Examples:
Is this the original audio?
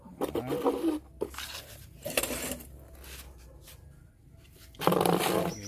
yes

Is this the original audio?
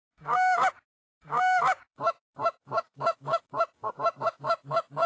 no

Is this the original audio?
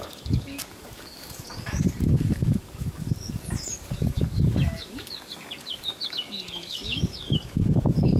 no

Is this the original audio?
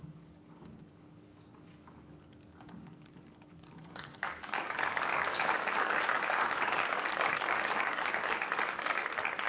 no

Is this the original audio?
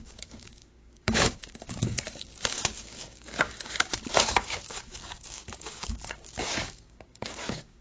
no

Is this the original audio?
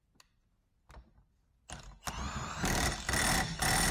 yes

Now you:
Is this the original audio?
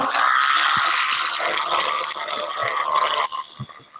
yes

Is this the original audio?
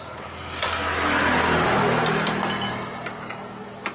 yes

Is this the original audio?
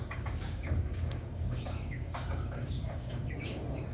no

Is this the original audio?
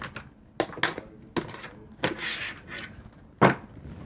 yes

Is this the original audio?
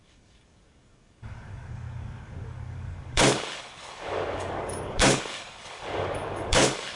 no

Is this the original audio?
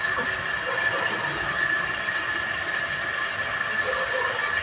yes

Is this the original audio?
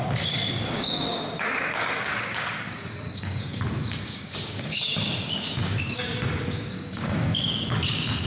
no